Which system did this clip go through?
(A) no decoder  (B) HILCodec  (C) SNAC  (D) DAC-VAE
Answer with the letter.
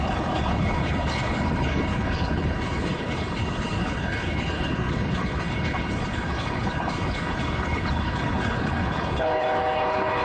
B